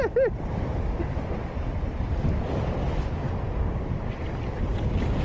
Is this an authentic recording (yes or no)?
yes